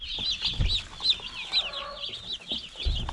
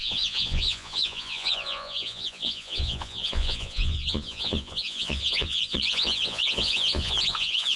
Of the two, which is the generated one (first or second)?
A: second